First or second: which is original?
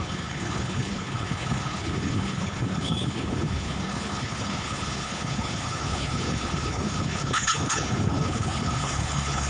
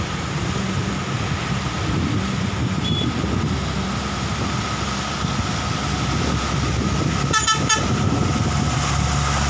second